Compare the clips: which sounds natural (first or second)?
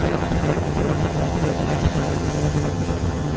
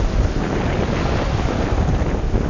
second